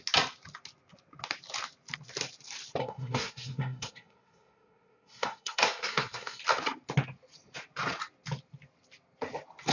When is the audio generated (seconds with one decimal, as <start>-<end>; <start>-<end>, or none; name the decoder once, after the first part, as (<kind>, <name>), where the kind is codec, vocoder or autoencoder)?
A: 2.8-6.4 (codec, SNAC)